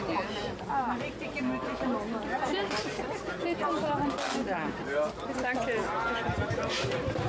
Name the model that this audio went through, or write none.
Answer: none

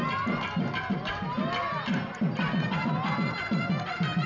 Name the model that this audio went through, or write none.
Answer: none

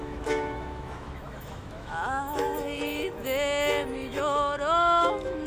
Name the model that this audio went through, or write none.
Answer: autoencoder, DAC-VAE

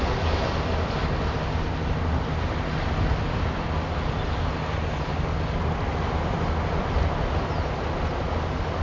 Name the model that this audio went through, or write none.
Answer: none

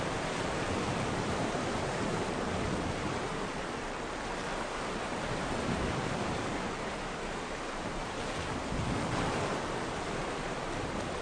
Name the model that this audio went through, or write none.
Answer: vocoder, BigVGAN v2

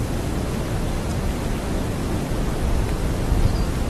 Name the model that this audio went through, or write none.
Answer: none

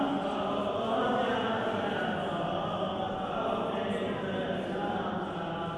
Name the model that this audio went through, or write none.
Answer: none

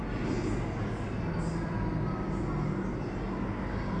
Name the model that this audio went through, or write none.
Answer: none